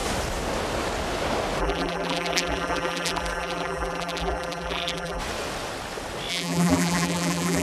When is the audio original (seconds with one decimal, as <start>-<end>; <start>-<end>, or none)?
0.0-1.6; 5.2-6.3